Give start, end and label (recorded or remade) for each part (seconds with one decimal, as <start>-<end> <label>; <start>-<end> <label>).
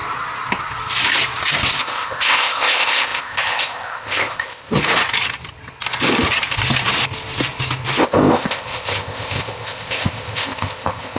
0.0-1.8 recorded; 1.8-4.7 remade; 4.7-8.0 recorded; 8.0-11.2 remade